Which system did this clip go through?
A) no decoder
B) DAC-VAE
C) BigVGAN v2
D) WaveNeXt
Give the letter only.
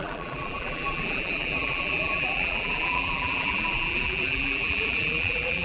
C